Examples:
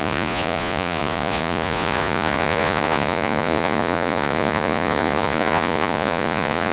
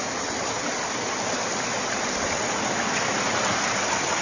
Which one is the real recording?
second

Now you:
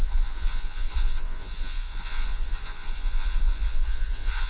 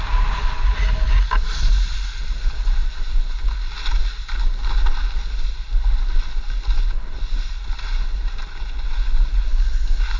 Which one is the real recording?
second